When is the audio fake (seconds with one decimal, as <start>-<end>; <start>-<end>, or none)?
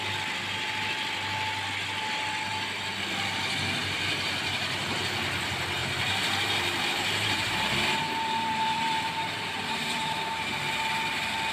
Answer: 5.8-10.6